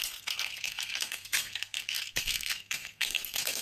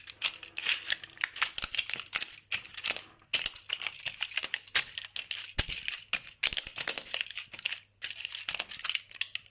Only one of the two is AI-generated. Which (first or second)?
first